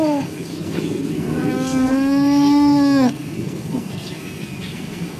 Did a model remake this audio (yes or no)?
yes